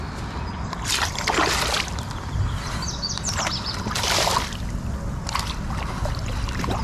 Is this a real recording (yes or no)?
yes